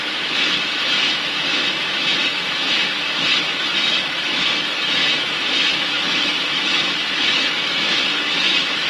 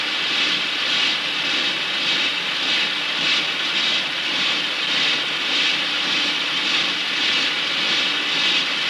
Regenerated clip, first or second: first